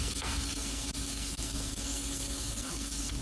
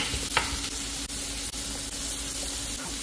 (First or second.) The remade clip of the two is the first